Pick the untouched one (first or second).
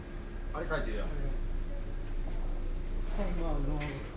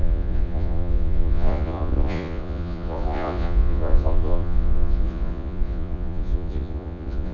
first